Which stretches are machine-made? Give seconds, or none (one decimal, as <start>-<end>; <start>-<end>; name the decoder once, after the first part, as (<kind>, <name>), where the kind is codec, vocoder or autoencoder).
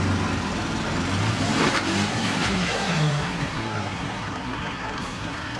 2.1-5.6 (codec, SNAC)